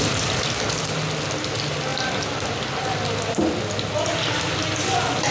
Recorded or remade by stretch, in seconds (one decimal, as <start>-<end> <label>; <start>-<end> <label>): 0.0-5.3 recorded